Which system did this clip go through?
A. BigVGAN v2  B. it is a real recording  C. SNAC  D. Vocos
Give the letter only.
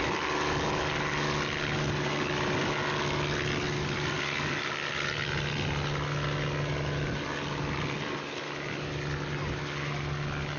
B